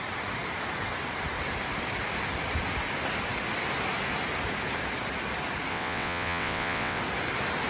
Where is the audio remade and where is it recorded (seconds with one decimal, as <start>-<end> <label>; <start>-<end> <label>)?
0.0-5.7 recorded; 5.7-7.0 remade; 7.0-7.7 recorded